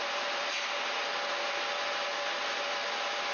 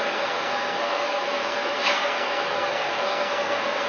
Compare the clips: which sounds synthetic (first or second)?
second